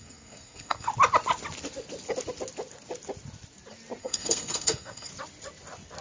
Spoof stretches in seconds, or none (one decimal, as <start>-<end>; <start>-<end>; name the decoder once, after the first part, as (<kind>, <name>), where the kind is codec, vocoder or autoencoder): 0.0-0.9 (codec, SNAC); 4.0-5.1